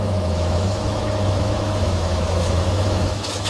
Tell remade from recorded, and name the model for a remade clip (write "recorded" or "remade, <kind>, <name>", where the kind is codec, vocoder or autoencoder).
remade, autoencoder, DAC-VAE